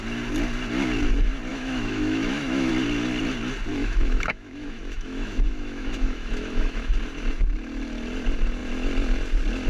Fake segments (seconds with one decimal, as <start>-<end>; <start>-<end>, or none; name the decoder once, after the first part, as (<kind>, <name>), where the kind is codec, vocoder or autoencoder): 1.5-2.7 (autoencoder, DAC-VAE); 3.7-6.9